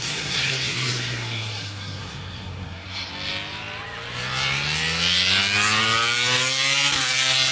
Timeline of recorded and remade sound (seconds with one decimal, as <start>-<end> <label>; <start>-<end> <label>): 0.0-3.1 remade; 3.1-7.5 recorded